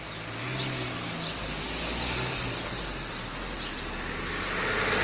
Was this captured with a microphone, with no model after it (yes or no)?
yes